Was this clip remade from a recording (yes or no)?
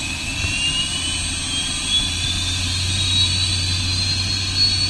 no